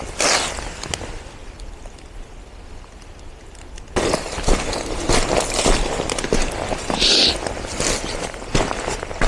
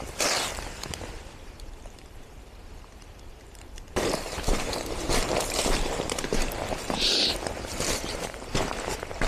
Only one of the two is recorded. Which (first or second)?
first